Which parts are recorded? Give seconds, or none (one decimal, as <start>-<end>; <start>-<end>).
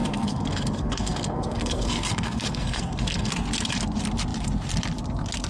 3.3-5.5